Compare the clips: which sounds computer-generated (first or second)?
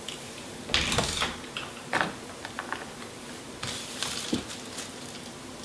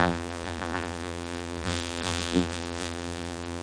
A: second